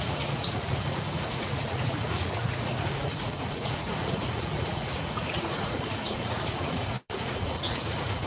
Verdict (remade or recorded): remade